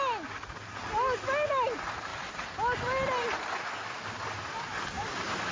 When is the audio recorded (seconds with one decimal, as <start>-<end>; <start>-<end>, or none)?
0.0-5.5